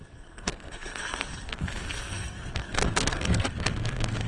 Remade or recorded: remade